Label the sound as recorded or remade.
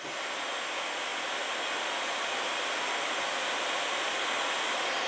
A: recorded